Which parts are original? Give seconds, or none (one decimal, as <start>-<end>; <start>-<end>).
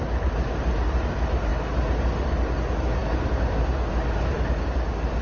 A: 0.0-5.2